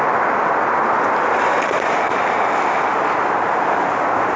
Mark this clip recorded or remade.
recorded